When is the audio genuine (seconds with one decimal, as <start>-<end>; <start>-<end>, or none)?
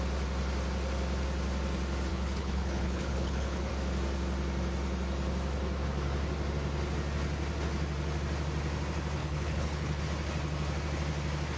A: 0.0-2.1; 3.7-9.2; 10.0-11.6